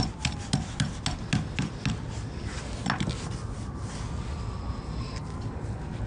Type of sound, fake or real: real